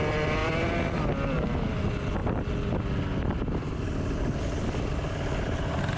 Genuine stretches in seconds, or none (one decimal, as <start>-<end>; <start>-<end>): 0.0-6.0